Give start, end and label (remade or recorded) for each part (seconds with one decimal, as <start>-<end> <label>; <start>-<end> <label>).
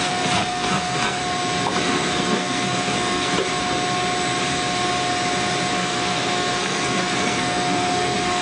0.0-1.2 remade; 1.2-1.8 recorded; 1.8-3.3 remade; 3.3-5.7 recorded; 5.7-8.4 remade